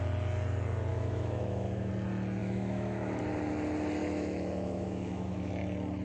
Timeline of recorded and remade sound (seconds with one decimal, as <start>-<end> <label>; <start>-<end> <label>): 0.0-0.9 recorded; 0.9-1.9 remade; 1.9-2.4 recorded; 2.4-3.2 remade; 3.2-4.0 recorded; 4.0-5.5 remade; 5.5-6.0 recorded